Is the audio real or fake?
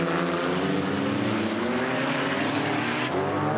real